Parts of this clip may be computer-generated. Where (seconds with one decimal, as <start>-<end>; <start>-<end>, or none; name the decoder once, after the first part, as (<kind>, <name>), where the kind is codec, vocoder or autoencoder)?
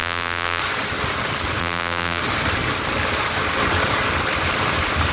0.0-0.6 (vocoder, BigVGAN v2); 1.6-2.2